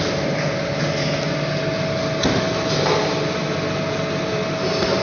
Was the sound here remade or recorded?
recorded